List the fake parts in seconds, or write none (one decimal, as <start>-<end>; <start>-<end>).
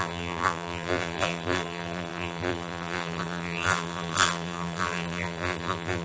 0.0-6.0